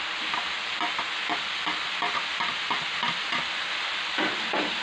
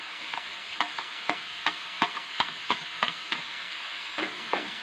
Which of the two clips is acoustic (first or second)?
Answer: first